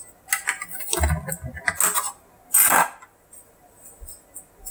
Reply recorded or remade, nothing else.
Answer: recorded